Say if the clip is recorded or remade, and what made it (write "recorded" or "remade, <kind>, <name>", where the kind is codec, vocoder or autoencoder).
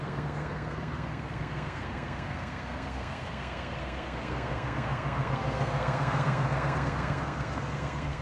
remade, codec, SNAC